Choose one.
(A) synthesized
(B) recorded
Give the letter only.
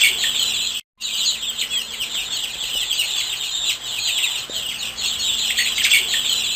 B